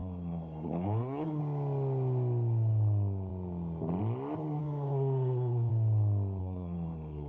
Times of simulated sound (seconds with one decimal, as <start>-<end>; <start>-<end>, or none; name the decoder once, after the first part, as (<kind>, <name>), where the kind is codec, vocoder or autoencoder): 0.0-1.4 (codec, SNAC); 4.6-5.7; 6.4-7.3